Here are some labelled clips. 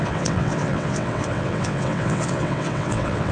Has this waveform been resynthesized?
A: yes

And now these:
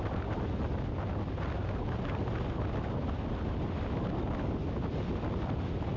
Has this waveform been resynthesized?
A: no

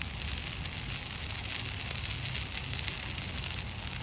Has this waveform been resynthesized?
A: no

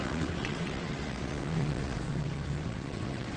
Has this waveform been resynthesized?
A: yes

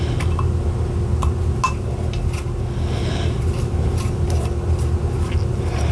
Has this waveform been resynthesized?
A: no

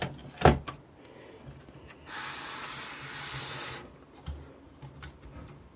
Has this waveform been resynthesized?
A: no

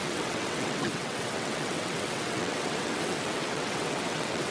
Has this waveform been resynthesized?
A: yes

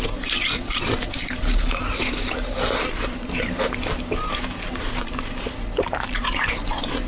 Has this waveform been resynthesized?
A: no